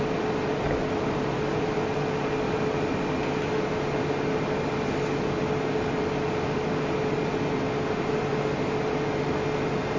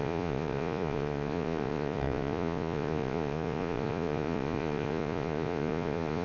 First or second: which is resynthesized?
second